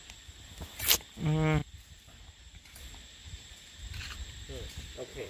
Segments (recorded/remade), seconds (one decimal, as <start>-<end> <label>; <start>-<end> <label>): 0.0-1.6 recorded; 1.6-2.8 remade; 2.8-3.2 recorded; 3.2-4.4 remade; 4.4-5.3 recorded